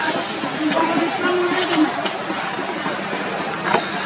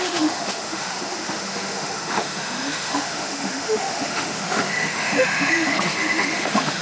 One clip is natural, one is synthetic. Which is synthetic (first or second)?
second